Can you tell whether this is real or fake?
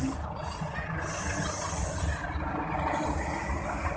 real